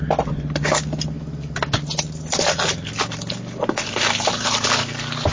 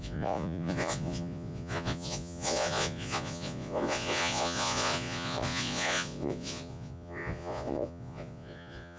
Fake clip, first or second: second